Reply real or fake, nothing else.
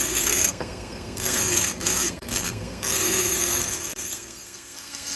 fake